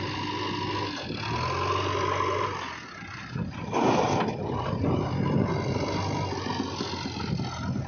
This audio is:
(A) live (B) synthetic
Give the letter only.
A